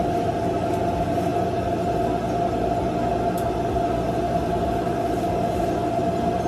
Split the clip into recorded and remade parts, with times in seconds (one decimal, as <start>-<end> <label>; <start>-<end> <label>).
0.0-6.5 recorded